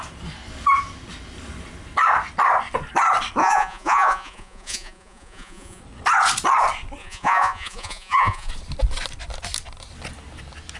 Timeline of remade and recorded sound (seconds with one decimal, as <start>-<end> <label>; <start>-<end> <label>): 0.0-3.4 recorded; 3.4-5.8 remade; 5.8-7.0 recorded; 7.0-8.5 remade; 8.5-10.8 recorded